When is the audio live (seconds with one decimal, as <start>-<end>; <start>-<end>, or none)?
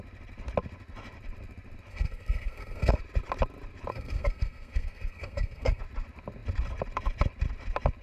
0.0-1.9; 3.0-3.9; 5.8-8.0